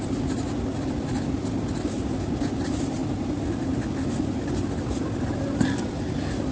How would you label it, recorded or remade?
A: recorded